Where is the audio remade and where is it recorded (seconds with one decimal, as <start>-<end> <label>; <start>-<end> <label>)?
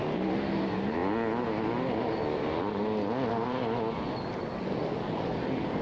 0.0-5.8 recorded